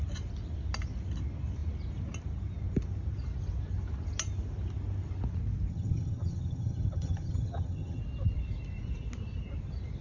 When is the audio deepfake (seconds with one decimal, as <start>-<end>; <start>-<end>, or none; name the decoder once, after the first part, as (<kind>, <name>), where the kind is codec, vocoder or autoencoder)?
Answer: 5.7-8.0 (vocoder, HiFi-GAN)